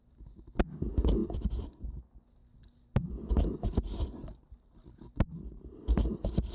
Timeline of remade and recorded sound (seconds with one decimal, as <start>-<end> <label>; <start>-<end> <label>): 0.0-6.5 recorded